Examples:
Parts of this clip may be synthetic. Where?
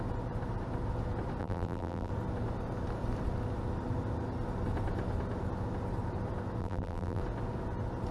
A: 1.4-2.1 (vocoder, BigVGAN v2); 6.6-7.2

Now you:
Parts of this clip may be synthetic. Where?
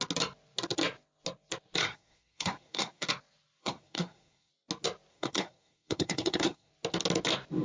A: 1.8-3.1 (codec, SNAC); 3.6-4.5; 5.1-6.7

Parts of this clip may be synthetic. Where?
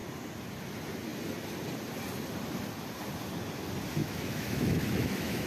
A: 4.0-5.5 (autoencoder, DAC-VAE)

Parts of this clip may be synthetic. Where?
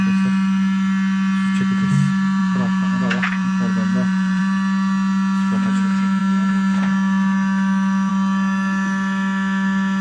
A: 2.4-4.4 (vocoder, Vocos)